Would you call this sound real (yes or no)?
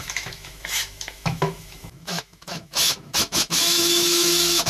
no